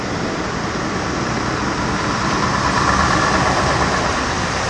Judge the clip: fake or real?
fake